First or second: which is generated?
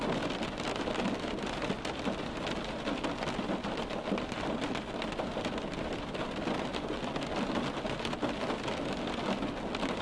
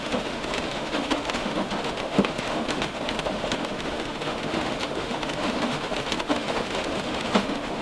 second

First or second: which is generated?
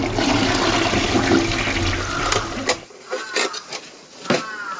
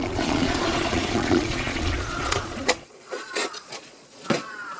second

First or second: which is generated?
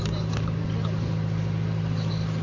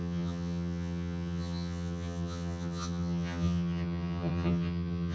second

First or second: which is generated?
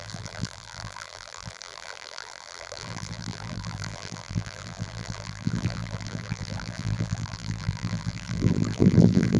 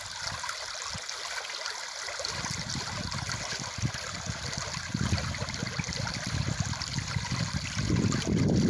first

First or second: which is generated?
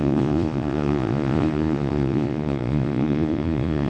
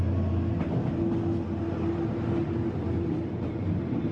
first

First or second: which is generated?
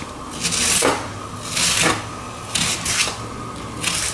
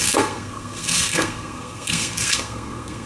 second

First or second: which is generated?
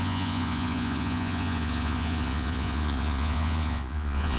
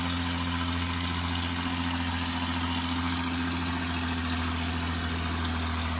first